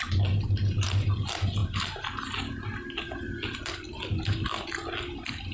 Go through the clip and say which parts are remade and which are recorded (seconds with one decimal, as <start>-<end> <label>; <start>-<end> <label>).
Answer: 0.0-5.5 recorded